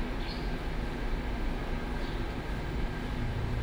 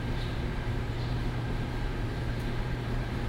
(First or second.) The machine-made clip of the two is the second